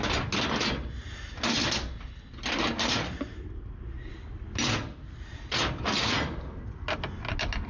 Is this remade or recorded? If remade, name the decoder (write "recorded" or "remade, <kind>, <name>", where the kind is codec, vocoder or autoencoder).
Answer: recorded